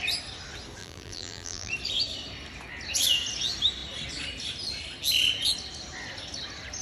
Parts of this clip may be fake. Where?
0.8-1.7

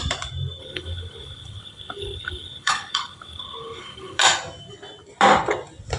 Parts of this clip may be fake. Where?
0.6-4.2

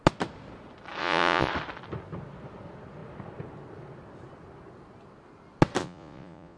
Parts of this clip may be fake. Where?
1.0-1.5; 5.8-6.6

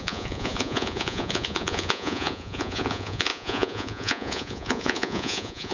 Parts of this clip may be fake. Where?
0.0-5.7

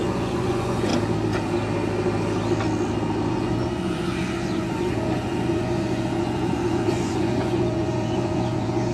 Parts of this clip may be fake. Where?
0.0-0.9; 3.3-8.9